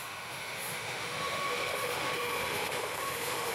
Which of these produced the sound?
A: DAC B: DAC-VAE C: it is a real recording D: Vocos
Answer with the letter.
B